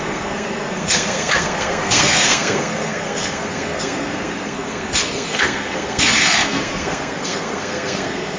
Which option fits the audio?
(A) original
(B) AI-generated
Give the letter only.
B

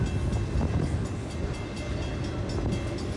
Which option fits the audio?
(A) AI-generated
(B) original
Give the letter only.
B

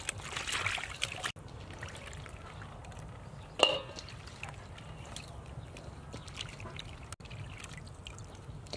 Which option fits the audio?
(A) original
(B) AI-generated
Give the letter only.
A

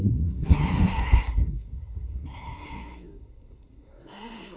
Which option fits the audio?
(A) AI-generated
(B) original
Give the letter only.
A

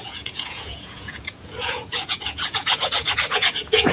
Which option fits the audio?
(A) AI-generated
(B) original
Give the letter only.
A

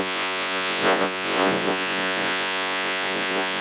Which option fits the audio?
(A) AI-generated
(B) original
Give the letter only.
A